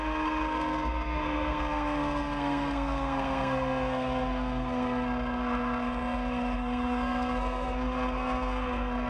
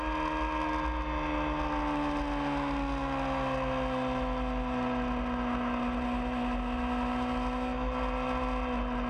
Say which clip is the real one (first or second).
second